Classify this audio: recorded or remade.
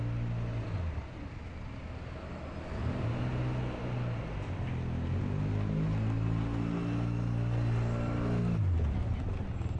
recorded